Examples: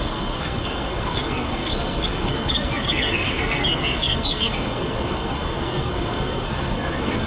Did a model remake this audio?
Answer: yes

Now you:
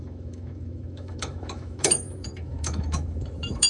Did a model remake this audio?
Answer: yes